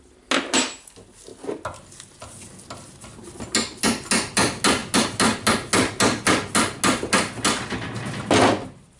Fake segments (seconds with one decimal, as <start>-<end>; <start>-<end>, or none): none